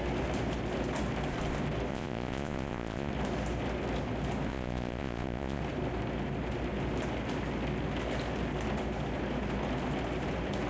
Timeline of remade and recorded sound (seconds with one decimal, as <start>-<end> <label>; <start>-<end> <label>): 0.0-1.9 recorded; 1.9-3.1 remade; 3.1-4.5 recorded; 4.5-5.6 remade; 5.6-10.7 recorded